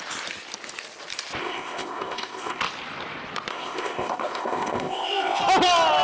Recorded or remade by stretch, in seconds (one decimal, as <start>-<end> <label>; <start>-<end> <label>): 0.0-1.4 recorded; 1.4-2.6 remade; 2.6-3.5 recorded; 3.5-5.4 remade; 5.4-6.0 recorded